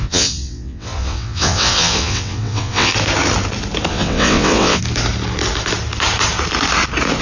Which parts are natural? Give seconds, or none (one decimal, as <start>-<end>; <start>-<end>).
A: 2.9-3.9; 4.8-7.2